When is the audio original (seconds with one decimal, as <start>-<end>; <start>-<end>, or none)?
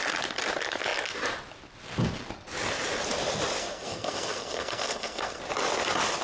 0.0-3.6; 5.4-6.2